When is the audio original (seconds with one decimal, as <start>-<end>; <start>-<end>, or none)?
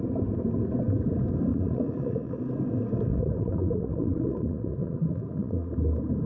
0.0-1.5; 2.4-3.1; 5.7-6.3